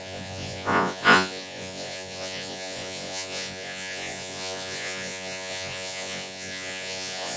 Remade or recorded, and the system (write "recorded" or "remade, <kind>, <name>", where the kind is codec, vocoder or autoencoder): remade, vocoder, Vocos